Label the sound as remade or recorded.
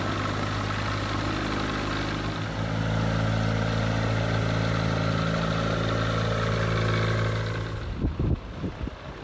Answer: recorded